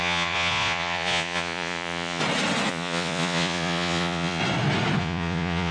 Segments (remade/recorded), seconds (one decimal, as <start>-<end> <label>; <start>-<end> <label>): 0.0-2.2 remade; 2.2-2.7 recorded; 2.7-4.4 remade; 4.4-5.0 recorded; 5.0-5.7 remade